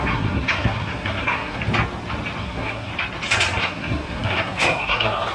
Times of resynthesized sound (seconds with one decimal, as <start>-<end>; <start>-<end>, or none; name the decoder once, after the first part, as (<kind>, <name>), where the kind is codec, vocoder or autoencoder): 0.0-1.6 (codec, SNAC); 2.4-2.9; 3.6-5.3